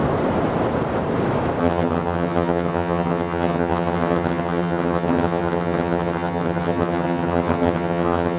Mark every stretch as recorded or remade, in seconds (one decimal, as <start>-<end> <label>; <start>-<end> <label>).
0.0-1.6 recorded; 1.6-8.4 remade